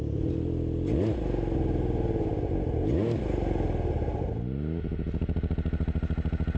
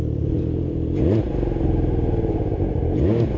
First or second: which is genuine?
first